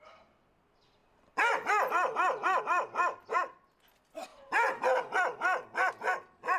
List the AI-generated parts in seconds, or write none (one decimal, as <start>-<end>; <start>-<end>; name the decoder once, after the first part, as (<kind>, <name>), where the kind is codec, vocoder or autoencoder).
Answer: none